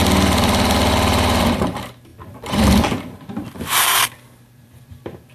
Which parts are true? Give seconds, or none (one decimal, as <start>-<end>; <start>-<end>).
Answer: 0.0-2.1

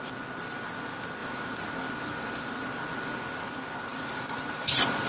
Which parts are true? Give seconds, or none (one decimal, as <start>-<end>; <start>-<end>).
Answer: 0.0-5.1

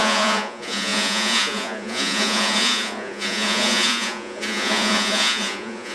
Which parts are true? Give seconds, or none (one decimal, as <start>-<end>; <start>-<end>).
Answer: none

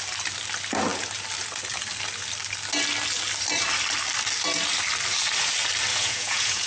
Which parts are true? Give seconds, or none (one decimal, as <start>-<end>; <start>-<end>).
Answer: 0.0-5.9

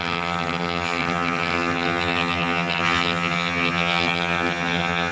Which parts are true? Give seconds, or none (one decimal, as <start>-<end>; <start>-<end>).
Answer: none

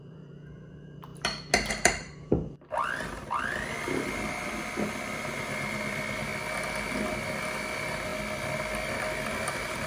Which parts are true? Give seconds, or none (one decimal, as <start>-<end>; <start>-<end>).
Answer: 1.1-1.7; 6.3-7.4; 8.1-9.3